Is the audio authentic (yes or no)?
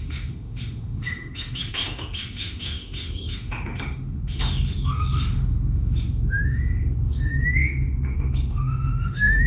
no